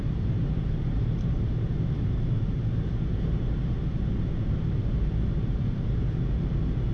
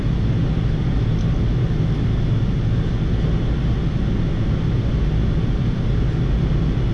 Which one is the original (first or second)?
second